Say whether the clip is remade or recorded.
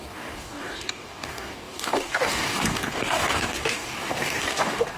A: remade